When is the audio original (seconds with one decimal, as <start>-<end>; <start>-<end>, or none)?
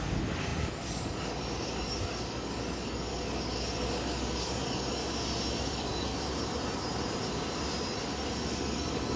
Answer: 5.0-5.6; 6.1-8.6